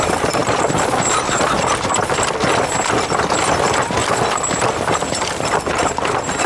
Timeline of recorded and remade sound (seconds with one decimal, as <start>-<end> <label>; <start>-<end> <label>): 0.0-0.4 recorded; 0.4-2.0 remade; 2.0-4.0 recorded; 4.0-6.5 remade